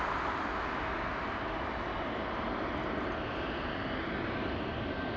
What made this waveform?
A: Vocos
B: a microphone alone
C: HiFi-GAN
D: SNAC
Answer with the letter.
B